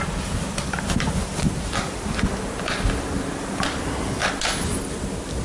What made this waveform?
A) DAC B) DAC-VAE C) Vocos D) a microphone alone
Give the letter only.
D